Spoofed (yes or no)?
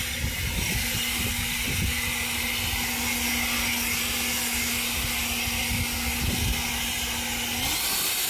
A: no